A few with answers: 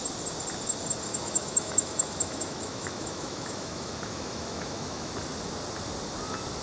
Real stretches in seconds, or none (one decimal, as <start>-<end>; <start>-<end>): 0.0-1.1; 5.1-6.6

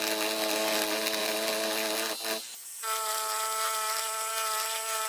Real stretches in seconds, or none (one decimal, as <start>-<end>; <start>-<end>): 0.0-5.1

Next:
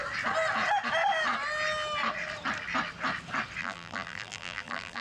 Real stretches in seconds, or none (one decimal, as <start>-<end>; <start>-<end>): 0.0-3.6